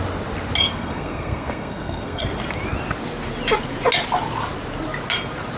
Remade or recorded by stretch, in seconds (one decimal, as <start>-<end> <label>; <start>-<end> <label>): 0.0-0.7 recorded; 0.7-2.2 remade; 2.2-5.6 recorded